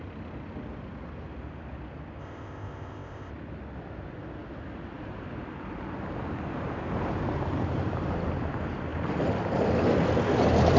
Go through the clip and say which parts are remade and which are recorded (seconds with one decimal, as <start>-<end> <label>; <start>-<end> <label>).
0.0-2.2 recorded; 2.2-3.3 remade; 3.3-10.8 recorded